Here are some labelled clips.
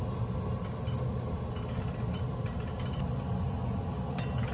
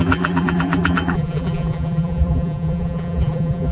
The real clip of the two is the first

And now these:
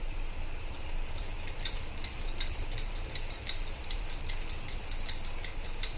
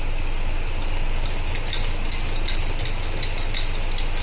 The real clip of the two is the second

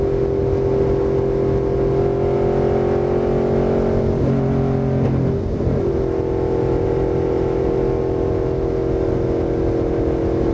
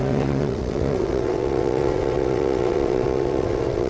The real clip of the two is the first